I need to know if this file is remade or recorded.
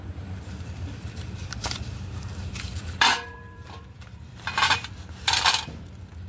remade